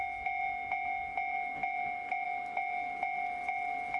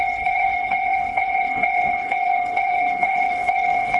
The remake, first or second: second